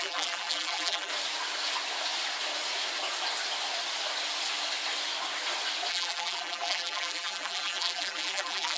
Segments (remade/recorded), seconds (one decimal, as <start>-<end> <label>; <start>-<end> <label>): 0.0-1.1 remade; 1.1-5.9 recorded; 5.9-8.8 remade